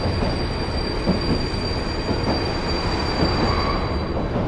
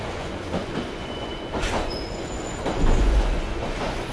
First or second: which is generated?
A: second